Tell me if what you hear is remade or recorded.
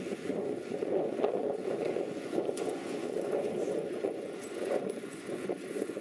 remade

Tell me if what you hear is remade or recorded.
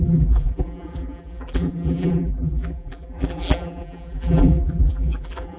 remade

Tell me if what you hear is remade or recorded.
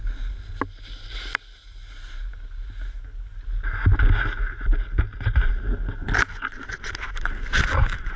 recorded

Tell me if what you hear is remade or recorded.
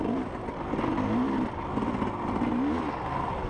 recorded